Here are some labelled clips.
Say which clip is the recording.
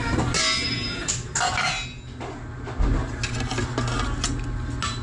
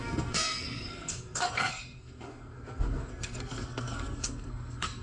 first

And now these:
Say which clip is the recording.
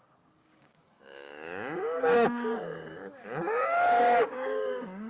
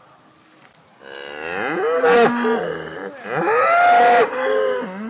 second